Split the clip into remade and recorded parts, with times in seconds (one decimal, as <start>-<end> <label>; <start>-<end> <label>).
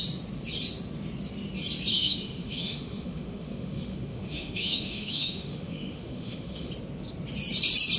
0.0-1.9 recorded; 1.9-6.7 remade; 6.7-8.0 recorded